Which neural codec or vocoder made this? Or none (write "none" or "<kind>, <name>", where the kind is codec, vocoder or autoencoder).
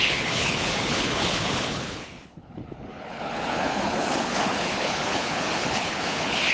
codec, HILCodec